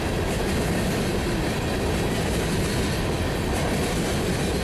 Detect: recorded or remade recorded